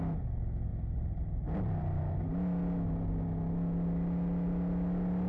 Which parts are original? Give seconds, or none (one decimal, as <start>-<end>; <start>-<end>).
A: 0.0-0.7; 2.0-5.3